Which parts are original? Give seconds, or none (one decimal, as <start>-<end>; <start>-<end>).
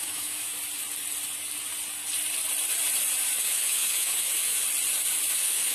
0.5-3.4; 4.6-5.3